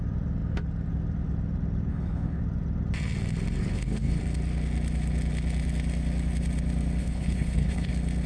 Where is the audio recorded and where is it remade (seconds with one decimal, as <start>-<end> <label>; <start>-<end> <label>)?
0.0-1.9 recorded; 1.9-2.4 remade; 2.4-3.6 recorded; 3.6-4.2 remade; 4.2-7.0 recorded; 7.0-7.9 remade; 7.9-8.3 recorded